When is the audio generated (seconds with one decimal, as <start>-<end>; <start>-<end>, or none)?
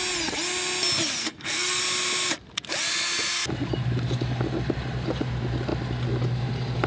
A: 1.2-1.8